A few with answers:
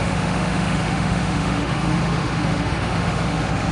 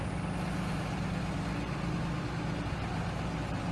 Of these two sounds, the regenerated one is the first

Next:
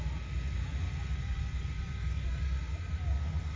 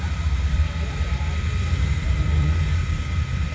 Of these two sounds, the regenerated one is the second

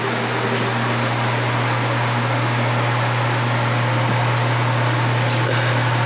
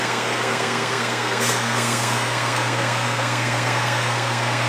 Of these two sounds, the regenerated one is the second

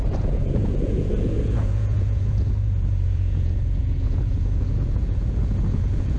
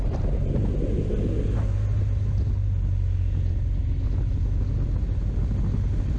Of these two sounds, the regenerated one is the first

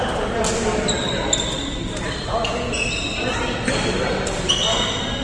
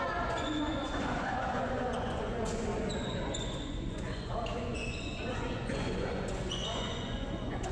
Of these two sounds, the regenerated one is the second